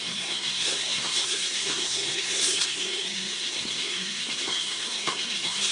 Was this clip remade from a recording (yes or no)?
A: yes